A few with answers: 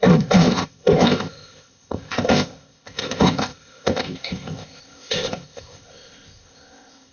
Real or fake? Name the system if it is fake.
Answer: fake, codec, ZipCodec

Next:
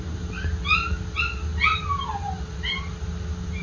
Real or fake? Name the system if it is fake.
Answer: real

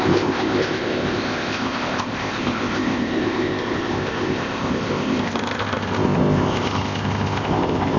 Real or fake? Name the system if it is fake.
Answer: fake, codec, ZipCodec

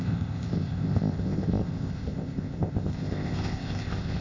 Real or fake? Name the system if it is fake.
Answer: fake, codec, ZipCodec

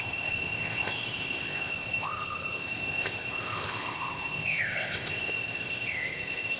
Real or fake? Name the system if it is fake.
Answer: fake, codec, ZipCodec